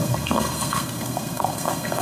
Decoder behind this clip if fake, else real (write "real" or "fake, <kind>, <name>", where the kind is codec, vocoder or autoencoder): fake, codec, SNAC